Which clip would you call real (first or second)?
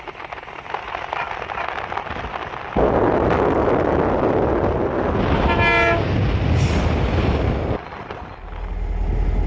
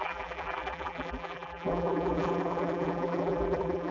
first